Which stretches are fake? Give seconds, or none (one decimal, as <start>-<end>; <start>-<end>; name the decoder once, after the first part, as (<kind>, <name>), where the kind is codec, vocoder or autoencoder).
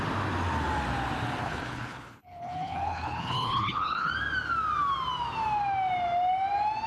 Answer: 1.4-4.1 (codec, HILCodec)